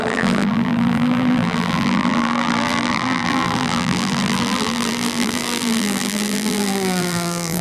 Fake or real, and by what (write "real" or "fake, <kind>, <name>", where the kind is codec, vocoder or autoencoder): fake, vocoder, BigVGAN v2